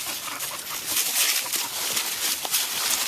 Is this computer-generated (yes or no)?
no